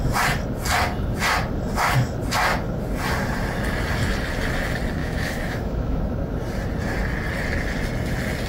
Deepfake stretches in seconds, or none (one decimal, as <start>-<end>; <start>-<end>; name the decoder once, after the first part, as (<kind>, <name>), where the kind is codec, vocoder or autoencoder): 5.0-6.0 (autoencoder, DAC-VAE)